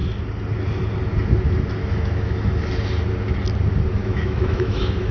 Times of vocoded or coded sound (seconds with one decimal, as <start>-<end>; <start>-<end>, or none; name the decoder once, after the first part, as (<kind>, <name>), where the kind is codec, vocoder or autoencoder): 1.8-2.4 (autoencoder, DAC-VAE); 4.0-5.1

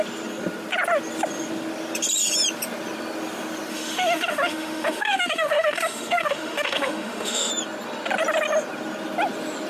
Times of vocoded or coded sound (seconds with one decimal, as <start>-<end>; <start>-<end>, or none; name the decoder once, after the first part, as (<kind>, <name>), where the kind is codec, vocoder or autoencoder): 3.7-7.5 (autoencoder, DAC-VAE)

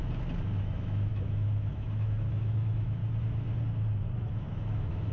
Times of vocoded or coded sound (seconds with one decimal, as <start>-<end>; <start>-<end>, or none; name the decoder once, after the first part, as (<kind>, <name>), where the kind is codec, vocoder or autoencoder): 0.6-3.0 (autoencoder, DAC-VAE); 4.3-5.1